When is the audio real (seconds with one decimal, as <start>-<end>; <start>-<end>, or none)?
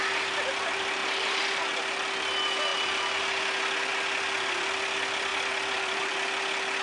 0.0-1.0; 1.5-2.7; 3.2-5.3; 6.1-6.8